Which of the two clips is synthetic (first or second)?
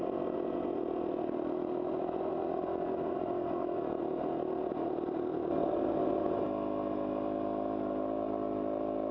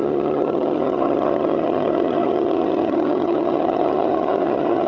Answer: second